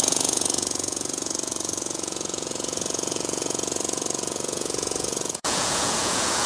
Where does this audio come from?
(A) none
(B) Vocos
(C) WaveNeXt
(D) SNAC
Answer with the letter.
B